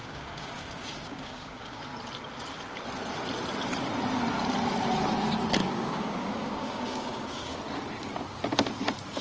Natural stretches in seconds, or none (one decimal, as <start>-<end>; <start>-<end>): 1.8-5.6; 7.6-9.2